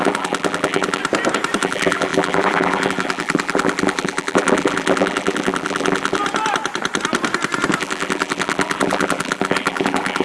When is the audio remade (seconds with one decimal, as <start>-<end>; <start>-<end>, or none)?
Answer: 0.0-1.0; 1.6-6.2; 7.8-10.2